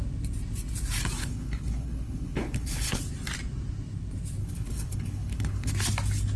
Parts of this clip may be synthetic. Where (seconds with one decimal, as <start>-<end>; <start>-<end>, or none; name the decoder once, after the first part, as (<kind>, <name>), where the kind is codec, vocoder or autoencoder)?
1.2-3.0 (codec, HILCodec); 4.4-5.7